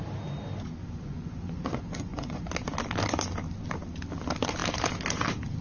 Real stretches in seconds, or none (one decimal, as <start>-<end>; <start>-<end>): 0.0-0.8; 2.4-5.6